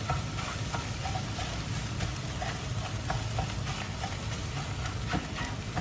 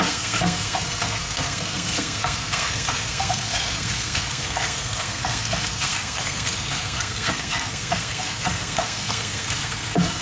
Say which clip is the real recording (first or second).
first